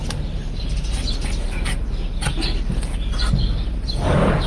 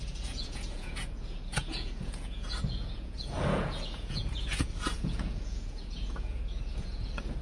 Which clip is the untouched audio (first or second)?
first